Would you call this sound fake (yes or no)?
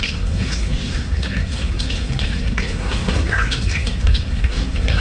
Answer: yes